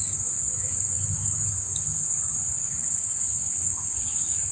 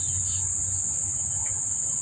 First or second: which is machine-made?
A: first